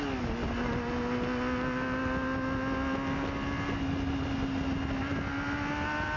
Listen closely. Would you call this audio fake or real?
real